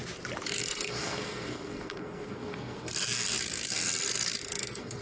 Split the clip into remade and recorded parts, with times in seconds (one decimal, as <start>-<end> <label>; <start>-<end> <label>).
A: 0.0-0.6 recorded; 0.6-5.0 remade